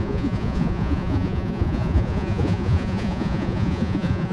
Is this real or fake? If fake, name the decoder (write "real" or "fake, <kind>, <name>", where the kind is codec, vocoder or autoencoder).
fake, vocoder, Vocos